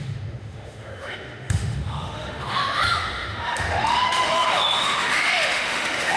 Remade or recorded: remade